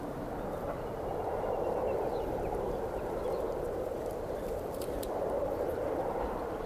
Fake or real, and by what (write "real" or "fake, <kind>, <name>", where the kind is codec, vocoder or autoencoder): fake, vocoder, BigVGAN v2